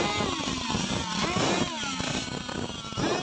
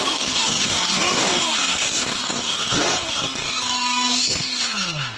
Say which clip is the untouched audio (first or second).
first